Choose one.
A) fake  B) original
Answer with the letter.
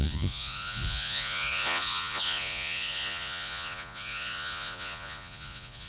A